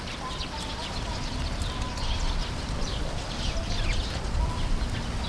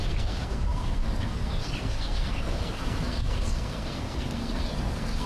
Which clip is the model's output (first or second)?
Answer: second